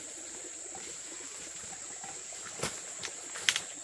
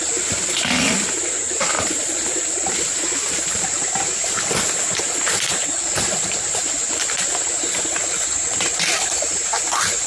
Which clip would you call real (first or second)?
first